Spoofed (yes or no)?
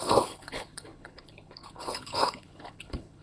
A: yes